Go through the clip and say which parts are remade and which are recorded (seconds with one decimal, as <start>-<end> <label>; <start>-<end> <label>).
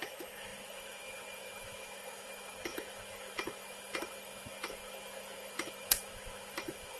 0.0-7.0 remade